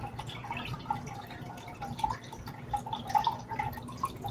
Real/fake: real